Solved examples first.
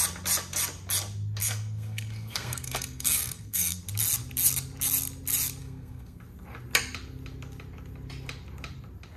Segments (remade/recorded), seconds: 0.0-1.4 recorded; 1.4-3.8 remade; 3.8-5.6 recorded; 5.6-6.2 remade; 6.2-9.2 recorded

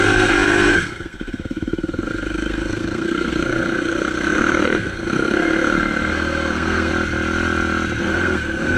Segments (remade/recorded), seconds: 0.0-6.9 remade; 6.9-8.0 recorded; 8.0-8.8 remade

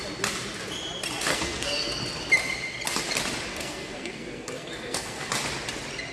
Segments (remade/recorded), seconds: 0.0-1.3 recorded; 1.3-1.9 remade; 1.9-3.5 recorded; 3.5-5.3 remade; 5.3-6.1 recorded

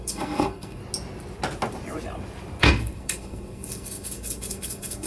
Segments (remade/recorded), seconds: 0.0-0.8 remade; 0.8-2.6 recorded; 2.6-5.1 remade

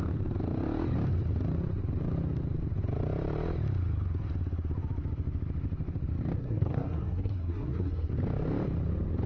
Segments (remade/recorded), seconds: 0.0-6.4 recorded; 6.4-8.1 remade; 8.1-9.3 recorded

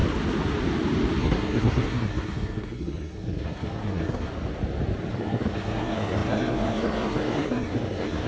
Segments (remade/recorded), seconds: 0.0-1.2 recorded; 1.2-4.3 remade; 4.3-5.1 recorded; 5.1-8.3 remade

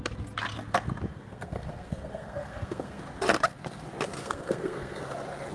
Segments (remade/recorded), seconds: 0.0-1.1 recorded; 1.1-3.0 remade; 3.0-4.2 recorded; 4.2-5.0 remade; 5.0-5.5 recorded